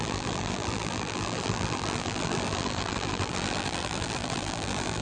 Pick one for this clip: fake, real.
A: fake